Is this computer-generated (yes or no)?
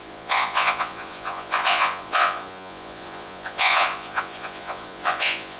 yes